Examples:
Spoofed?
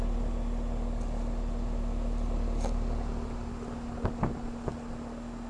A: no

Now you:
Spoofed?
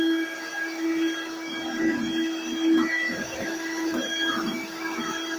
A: yes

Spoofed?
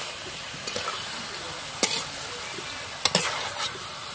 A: no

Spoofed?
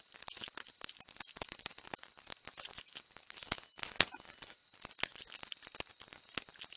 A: no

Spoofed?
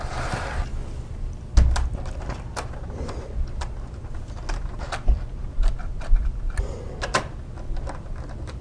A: no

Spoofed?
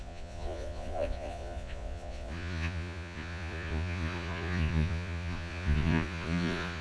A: yes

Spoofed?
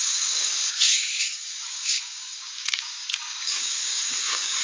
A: yes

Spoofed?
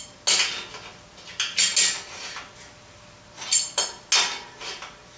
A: no